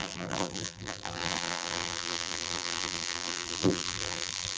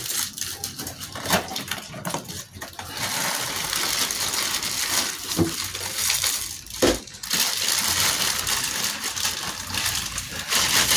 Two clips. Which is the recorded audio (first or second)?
second